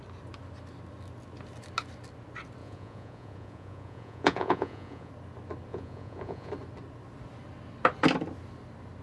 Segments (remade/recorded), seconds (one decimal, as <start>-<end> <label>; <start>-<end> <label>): 0.0-2.6 recorded; 2.6-5.1 remade; 5.1-5.7 recorded; 5.7-6.5 remade; 6.5-9.0 recorded